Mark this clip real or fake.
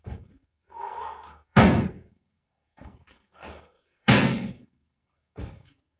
fake